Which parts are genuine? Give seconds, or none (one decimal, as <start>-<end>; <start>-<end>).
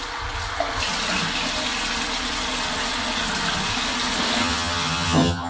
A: 0.0-4.4